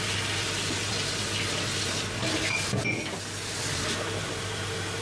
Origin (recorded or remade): recorded